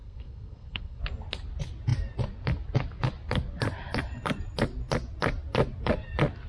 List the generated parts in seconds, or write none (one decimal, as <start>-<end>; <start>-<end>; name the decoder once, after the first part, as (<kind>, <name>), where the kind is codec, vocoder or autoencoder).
0.0-1.0 (codec, SNAC)